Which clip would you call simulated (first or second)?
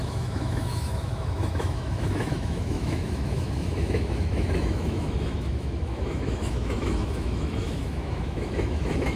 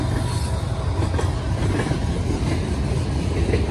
first